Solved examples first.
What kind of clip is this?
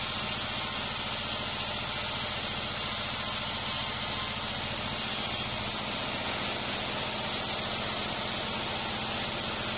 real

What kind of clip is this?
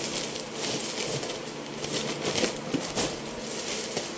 real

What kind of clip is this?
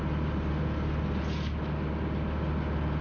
real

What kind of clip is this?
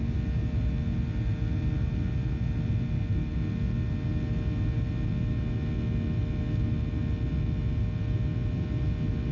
real